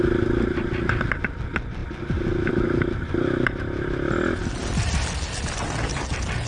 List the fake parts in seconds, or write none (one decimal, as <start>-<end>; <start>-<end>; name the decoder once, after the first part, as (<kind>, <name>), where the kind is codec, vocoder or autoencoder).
none